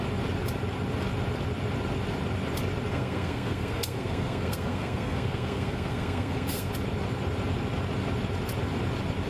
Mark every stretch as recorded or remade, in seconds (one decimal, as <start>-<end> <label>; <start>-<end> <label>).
0.0-2.9 recorded; 2.9-6.7 remade; 6.7-9.3 recorded